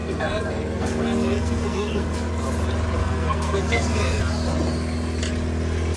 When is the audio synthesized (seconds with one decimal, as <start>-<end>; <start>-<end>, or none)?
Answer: 0.0-2.3; 3.0-4.2